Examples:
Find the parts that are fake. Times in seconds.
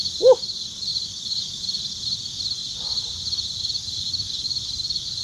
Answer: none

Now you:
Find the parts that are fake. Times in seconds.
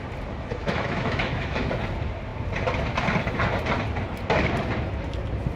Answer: 0.6-1.7 (autoencoder, DAC-VAE)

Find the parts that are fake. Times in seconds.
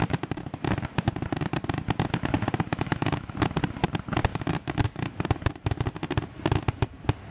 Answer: 2.7-3.3 (autoencoder, DAC-VAE); 4.3-5.1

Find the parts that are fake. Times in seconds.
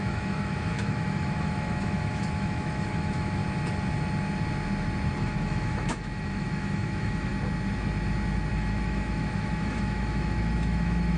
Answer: 0.0-3.4 (autoencoder, DAC-VAE); 5.2-7.3; 8.5-11.2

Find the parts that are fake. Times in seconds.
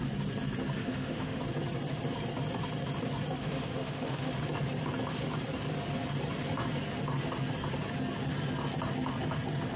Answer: 0.8-1.4 (autoencoder, DAC-VAE); 3.4-4.3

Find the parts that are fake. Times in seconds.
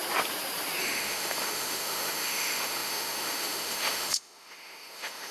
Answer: 0.8-5.3 (autoencoder, DAC-VAE)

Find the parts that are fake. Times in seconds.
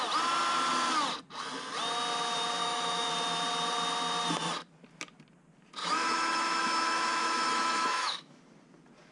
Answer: 2.6-3.1 (autoencoder, DAC-VAE); 5.8-8.4